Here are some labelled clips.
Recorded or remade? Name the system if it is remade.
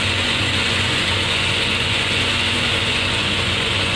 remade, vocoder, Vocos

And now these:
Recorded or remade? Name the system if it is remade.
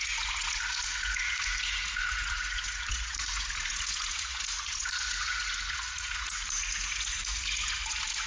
remade, vocoder, Vocos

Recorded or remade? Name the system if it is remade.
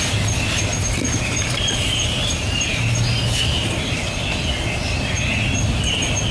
recorded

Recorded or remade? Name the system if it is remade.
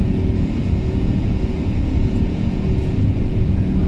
remade, vocoder, Vocos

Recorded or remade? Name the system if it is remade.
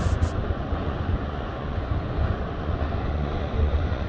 remade, vocoder, Vocos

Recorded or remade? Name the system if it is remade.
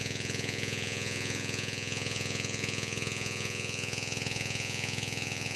remade, vocoder, Vocos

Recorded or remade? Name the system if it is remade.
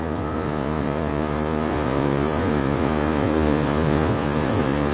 remade, vocoder, Vocos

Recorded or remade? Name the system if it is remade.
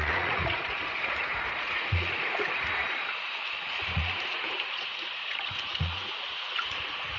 remade, vocoder, Vocos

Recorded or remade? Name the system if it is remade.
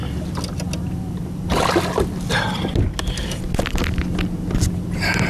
recorded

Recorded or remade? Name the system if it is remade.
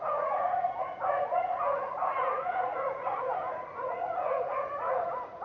remade, vocoder, Vocos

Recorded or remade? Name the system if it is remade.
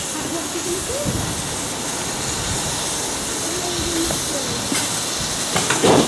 recorded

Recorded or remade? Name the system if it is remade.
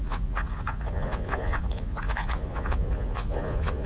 remade, vocoder, Vocos